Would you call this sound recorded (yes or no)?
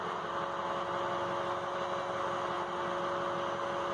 yes